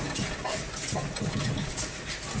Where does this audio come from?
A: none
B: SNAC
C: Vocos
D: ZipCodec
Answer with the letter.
A